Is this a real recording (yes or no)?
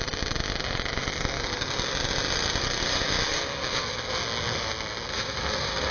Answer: yes